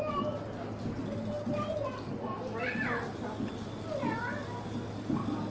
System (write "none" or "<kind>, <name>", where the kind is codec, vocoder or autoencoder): none